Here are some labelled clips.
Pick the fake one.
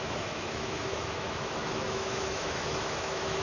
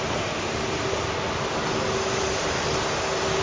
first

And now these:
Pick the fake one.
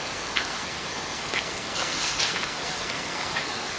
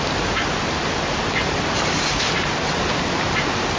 first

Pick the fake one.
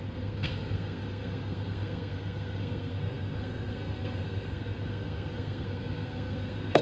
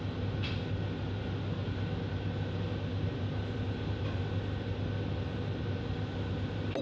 first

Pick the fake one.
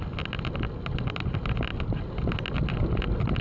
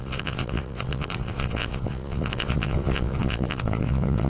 second